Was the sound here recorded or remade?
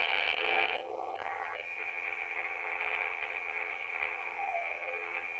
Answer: remade